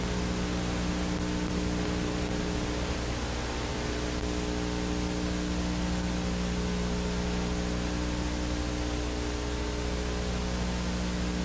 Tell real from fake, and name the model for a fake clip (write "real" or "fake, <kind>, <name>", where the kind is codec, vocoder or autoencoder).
real